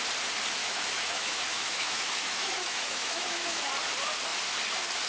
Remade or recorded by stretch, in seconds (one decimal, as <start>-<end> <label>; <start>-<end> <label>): 0.0-0.6 recorded; 0.6-3.7 remade; 3.7-5.1 recorded